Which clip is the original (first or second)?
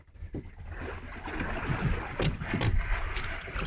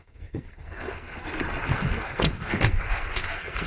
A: first